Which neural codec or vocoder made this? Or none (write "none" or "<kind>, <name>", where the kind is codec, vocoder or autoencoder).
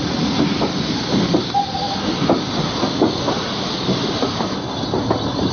none